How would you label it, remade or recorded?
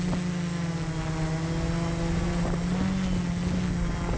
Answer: recorded